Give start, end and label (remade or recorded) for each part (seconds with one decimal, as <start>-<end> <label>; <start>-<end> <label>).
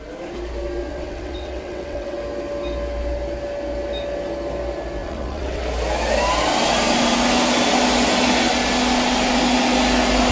0.0-0.9 recorded; 0.9-2.2 remade; 2.2-5.0 recorded; 5.0-5.7 remade; 5.7-10.3 recorded